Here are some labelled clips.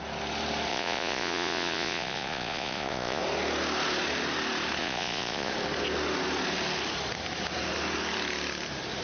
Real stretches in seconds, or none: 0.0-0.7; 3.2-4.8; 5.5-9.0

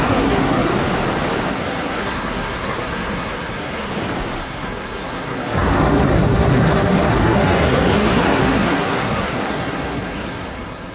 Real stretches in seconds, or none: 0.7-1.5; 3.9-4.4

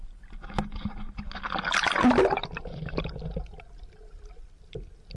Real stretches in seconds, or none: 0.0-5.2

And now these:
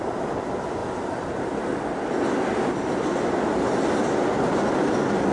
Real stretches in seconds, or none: 0.0-5.3

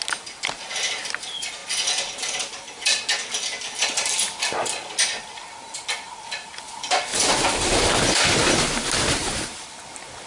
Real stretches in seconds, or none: 0.0-7.1; 8.0-9.2; 9.8-10.3

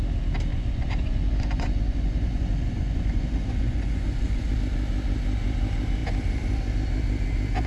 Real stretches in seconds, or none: 0.0-0.5; 4.5-7.7

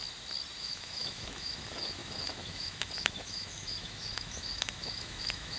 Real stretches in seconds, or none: 0.0-0.6

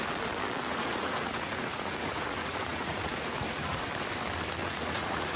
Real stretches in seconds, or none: 0.0-0.7; 3.9-4.6